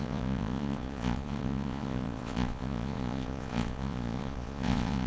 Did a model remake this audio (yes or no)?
yes